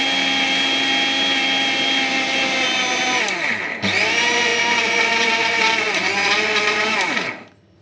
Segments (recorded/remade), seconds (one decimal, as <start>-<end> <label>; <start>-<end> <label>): 0.0-7.8 recorded